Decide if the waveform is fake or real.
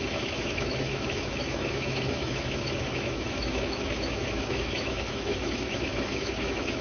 fake